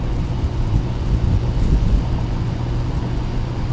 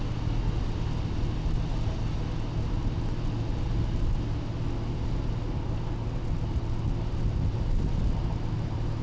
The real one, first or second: second